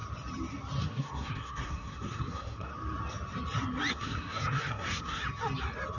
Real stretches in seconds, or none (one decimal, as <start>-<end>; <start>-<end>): 0.0-0.8; 2.7-3.9; 5.2-6.0